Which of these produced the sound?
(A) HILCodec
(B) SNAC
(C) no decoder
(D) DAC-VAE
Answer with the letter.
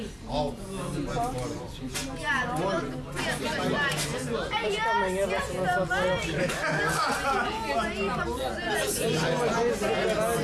C